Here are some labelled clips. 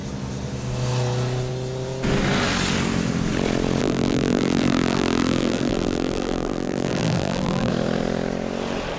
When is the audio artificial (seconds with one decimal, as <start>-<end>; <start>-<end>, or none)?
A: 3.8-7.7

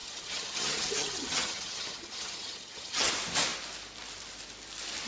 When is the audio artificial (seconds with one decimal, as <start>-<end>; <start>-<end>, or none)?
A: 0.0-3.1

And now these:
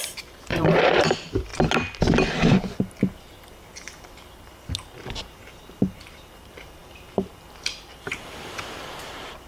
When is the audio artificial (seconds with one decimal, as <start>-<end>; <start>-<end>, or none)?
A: 0.0-1.5; 5.8-9.5

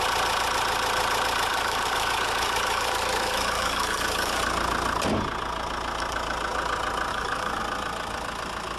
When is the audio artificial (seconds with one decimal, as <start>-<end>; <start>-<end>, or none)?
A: 1.5-4.4; 7.1-7.6

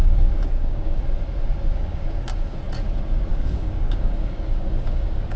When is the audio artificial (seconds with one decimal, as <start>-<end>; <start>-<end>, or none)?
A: 0.0-1.0; 1.7-2.6; 3.3-5.4